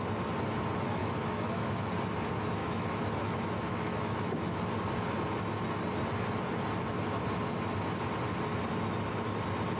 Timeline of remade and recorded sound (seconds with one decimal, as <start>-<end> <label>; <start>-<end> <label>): 0.0-1.0 recorded; 1.0-1.9 remade; 1.9-2.6 recorded; 2.6-4.6 remade; 4.6-9.8 recorded

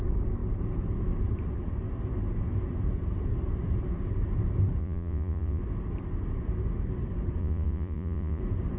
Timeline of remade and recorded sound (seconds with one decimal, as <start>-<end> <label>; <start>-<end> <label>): 0.0-4.8 recorded; 4.8-5.6 remade; 5.6-7.4 recorded; 7.4-8.4 remade; 8.4-8.8 recorded